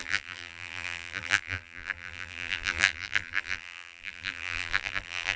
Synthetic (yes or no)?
yes